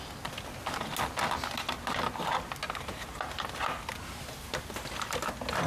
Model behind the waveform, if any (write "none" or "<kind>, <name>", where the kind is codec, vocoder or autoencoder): none